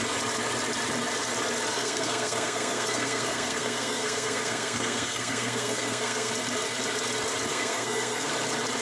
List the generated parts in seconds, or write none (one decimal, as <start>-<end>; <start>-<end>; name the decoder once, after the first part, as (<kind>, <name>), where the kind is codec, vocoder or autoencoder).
1.7-6.3 (codec, SNAC); 7.5-8.3